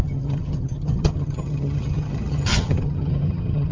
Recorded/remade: remade